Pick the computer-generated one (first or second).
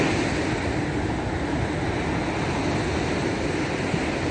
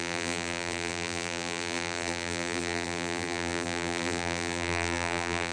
second